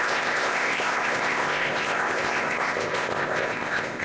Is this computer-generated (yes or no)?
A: yes